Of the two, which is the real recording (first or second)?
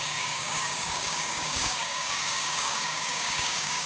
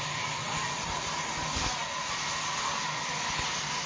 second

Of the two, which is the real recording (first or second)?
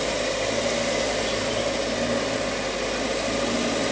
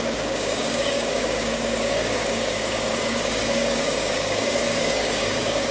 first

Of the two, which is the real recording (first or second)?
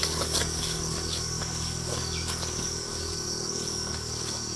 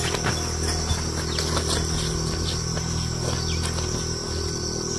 second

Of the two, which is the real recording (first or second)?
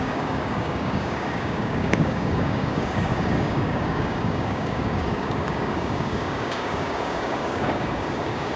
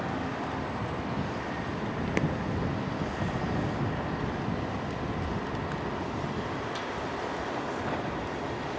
second